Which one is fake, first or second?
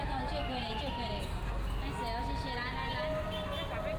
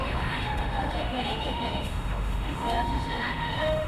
second